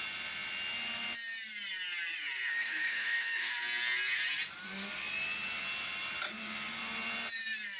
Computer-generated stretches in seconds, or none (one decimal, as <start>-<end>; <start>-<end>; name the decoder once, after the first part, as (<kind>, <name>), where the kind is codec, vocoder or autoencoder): 2.5-3.5 (codec, SNAC)